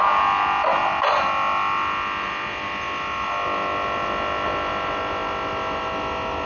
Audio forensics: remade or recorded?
recorded